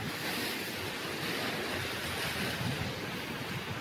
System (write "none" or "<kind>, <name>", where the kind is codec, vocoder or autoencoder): none